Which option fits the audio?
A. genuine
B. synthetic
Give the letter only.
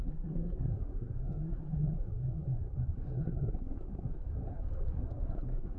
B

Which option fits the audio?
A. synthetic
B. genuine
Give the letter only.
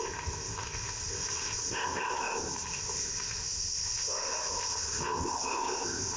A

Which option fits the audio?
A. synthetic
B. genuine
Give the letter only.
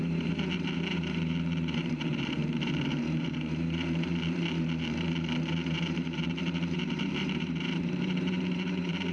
A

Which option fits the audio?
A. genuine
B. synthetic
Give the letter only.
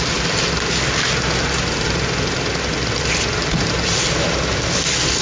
A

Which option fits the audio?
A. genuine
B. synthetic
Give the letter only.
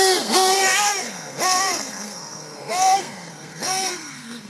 B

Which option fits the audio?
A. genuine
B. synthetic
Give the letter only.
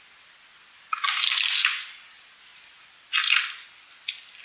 A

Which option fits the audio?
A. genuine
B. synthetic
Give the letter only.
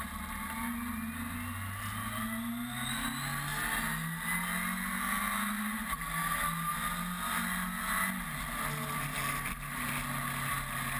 A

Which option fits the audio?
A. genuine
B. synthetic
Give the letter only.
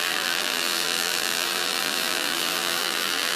B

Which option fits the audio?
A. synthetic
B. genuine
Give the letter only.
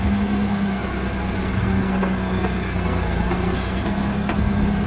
A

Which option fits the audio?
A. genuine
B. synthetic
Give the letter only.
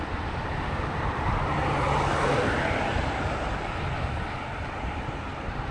B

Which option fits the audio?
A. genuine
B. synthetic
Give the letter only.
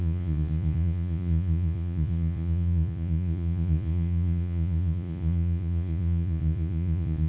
B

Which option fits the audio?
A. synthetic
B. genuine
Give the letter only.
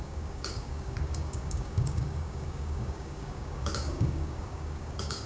A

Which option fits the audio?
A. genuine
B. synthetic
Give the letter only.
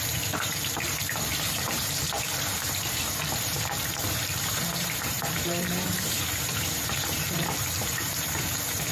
B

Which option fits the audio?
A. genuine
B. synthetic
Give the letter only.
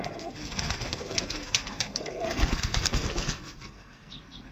B